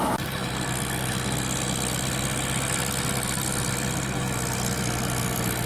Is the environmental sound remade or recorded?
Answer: recorded